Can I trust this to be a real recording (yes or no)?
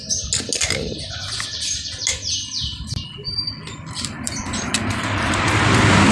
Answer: yes